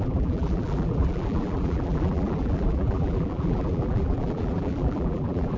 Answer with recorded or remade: remade